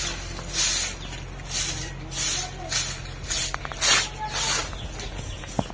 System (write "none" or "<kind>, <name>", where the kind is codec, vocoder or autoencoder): none